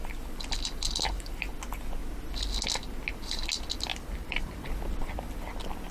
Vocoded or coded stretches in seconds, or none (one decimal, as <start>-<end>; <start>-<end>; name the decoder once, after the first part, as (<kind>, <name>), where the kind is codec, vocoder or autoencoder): 3.9-4.6 (vocoder, BigVGAN v2)